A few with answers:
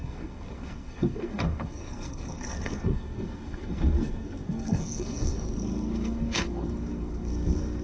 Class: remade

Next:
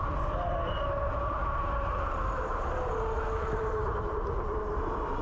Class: recorded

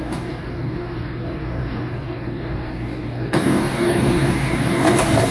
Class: remade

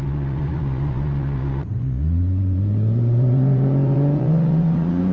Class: remade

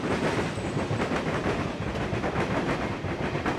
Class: remade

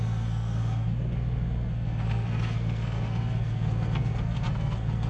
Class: remade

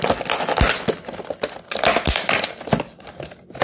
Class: recorded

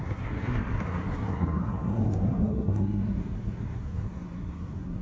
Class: remade